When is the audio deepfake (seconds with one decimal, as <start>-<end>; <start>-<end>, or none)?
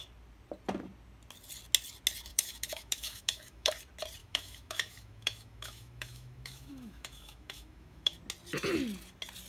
2.3-3.7; 4.2-8.2